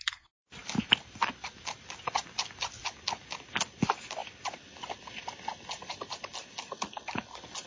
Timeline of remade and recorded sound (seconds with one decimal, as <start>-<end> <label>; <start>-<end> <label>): 0.0-7.7 recorded